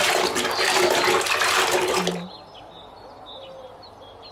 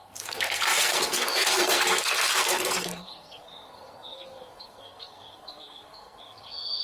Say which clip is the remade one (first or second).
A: second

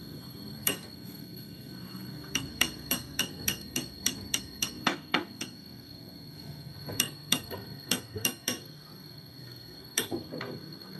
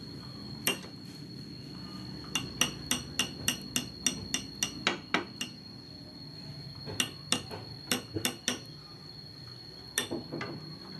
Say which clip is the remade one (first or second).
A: first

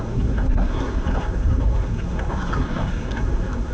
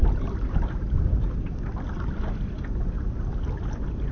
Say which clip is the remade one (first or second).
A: first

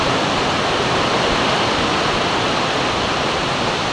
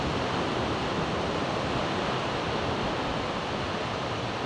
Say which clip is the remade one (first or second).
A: second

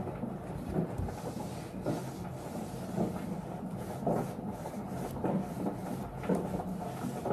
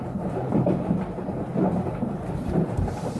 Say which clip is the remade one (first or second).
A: second